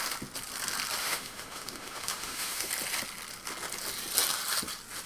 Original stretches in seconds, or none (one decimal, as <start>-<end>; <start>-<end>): 0.0-1.0; 2.7-5.1